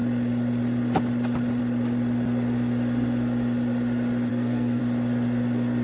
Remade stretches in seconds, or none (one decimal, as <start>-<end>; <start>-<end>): 4.3-4.8